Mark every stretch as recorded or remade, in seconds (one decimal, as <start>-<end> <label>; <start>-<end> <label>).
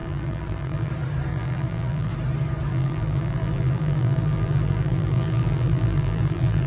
0.0-0.9 remade; 0.9-1.3 recorded; 1.3-2.1 remade; 2.1-2.7 recorded; 2.7-6.7 remade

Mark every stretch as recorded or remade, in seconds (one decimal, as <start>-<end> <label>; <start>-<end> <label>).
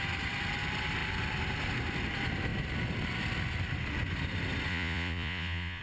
0.0-4.7 recorded; 4.7-5.8 remade